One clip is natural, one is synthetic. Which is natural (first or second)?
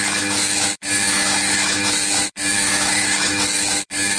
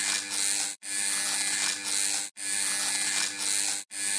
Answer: second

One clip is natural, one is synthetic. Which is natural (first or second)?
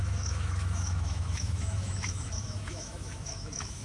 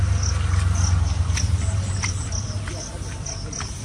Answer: second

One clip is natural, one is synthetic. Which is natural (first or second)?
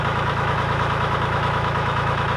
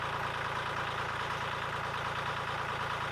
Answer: second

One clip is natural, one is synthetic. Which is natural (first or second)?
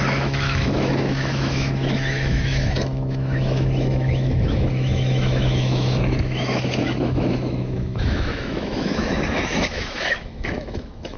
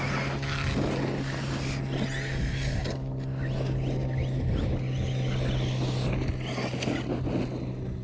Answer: second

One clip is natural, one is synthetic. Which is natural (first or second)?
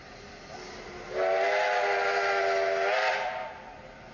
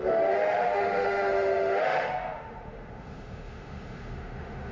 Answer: first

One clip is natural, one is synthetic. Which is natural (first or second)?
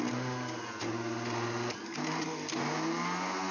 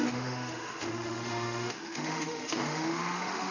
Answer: first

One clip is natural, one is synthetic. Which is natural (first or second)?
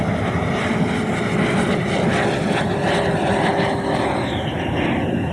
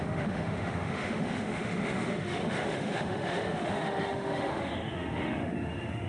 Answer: first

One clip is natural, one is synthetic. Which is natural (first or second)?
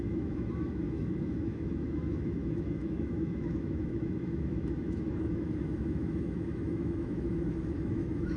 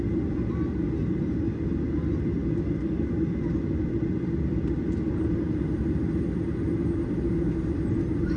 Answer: second